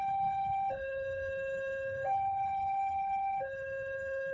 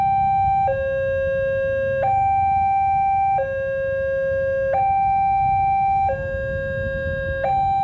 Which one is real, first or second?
second